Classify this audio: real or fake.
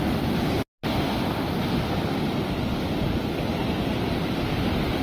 real